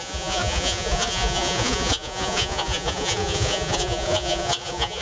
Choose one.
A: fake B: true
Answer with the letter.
A